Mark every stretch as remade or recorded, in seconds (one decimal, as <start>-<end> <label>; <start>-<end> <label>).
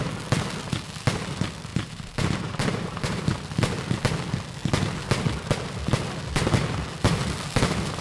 0.0-1.7 recorded; 1.7-3.2 remade; 3.2-8.0 recorded